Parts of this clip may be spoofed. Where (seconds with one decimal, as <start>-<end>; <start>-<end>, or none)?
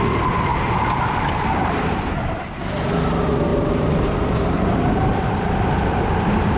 3.5-6.0